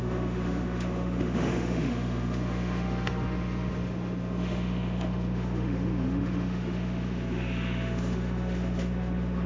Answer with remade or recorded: remade